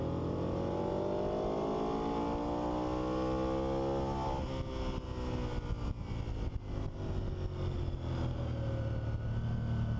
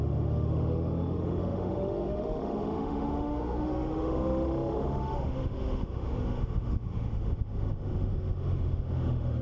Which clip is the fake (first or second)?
second